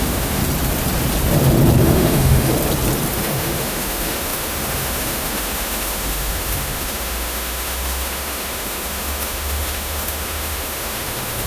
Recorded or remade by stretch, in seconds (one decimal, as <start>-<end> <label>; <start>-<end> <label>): 0.0-0.4 remade; 0.4-1.8 recorded; 1.8-2.5 remade; 2.5-3.1 recorded; 3.1-11.5 remade